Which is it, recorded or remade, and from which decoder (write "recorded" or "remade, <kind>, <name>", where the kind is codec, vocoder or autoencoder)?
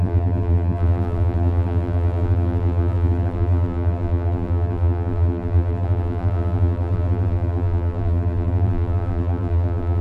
remade, vocoder, BigVGAN v2